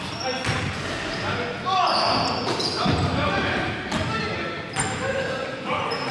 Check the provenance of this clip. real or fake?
real